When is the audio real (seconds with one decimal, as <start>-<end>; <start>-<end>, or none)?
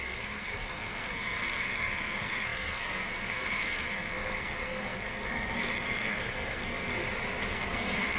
6.9-7.5